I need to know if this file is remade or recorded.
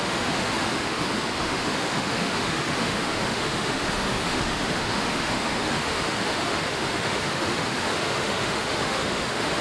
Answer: remade